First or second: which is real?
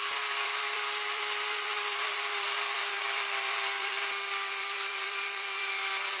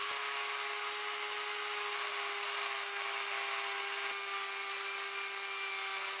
second